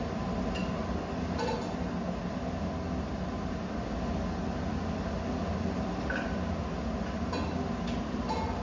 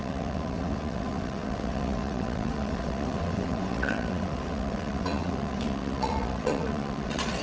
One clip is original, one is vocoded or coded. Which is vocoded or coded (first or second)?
second